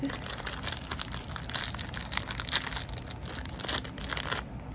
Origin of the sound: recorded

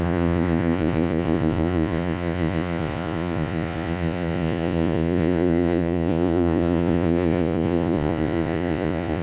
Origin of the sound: remade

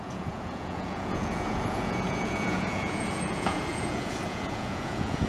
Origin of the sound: remade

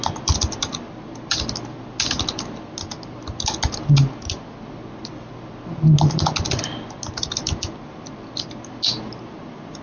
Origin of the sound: recorded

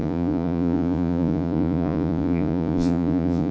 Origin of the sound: remade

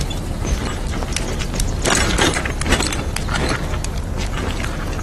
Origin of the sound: recorded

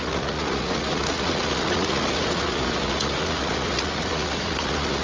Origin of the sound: remade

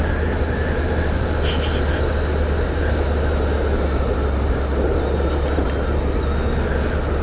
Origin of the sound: recorded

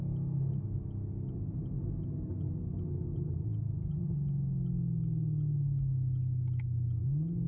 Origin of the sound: recorded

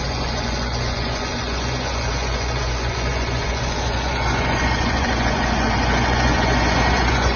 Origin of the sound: remade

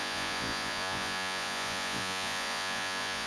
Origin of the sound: remade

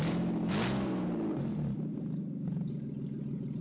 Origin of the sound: recorded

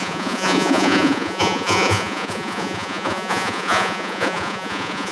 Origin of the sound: remade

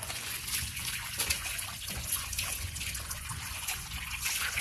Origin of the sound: remade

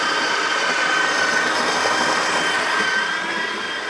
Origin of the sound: recorded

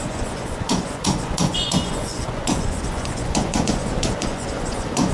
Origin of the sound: remade